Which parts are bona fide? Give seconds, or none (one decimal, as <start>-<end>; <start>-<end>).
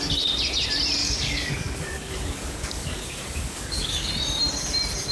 0.0-1.0; 4.1-5.1